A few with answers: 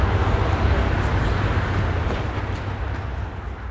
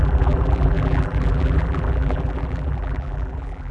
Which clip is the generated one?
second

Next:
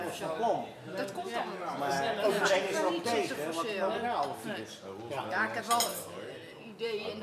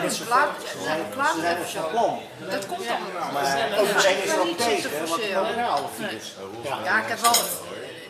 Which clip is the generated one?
second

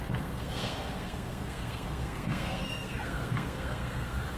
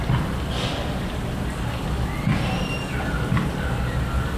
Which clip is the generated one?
first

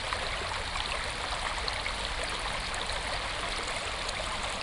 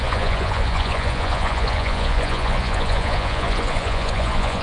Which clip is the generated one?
second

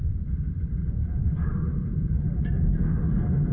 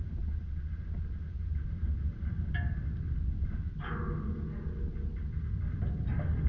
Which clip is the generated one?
first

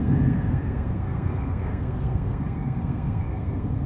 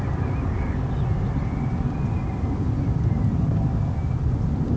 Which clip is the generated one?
first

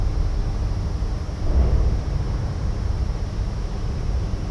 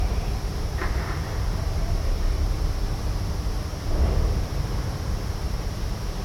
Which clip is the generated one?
second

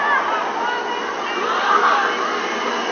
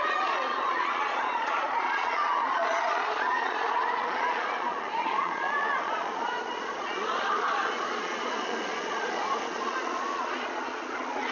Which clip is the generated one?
second